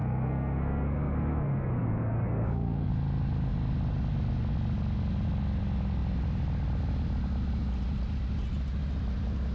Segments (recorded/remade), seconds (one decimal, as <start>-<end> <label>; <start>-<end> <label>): 0.0-2.9 remade; 2.9-9.5 recorded